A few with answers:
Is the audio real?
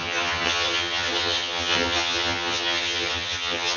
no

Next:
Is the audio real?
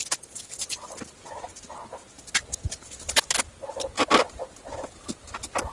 yes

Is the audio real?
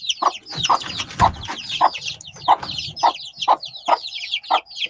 yes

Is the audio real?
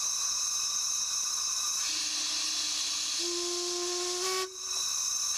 yes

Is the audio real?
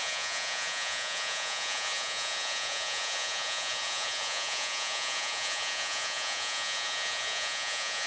no